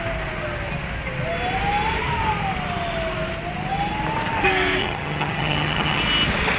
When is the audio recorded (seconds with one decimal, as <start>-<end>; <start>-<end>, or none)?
0.0-4.8; 6.0-6.6